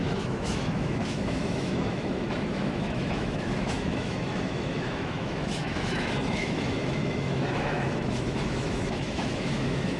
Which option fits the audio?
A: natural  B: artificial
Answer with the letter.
B